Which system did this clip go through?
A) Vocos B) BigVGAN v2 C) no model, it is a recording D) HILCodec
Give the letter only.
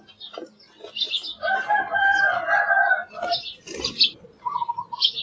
C